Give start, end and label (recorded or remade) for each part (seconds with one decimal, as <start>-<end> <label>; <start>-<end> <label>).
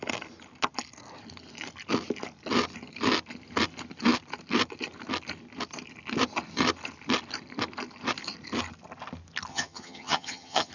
0.0-9.5 recorded; 9.5-10.7 remade